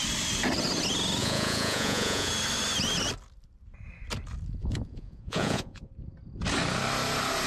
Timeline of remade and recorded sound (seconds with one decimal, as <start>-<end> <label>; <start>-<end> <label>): 0.0-1.2 recorded; 1.2-2.3 remade; 2.3-4.6 recorded; 4.6-5.9 remade; 5.9-7.5 recorded